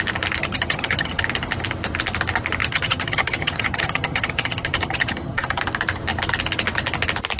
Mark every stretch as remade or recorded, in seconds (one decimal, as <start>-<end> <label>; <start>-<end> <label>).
0.0-0.4 recorded; 0.4-1.2 remade; 1.2-2.6 recorded; 2.6-5.6 remade; 5.6-7.4 recorded